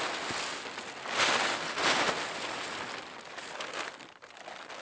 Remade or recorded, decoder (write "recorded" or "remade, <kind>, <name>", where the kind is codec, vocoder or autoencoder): recorded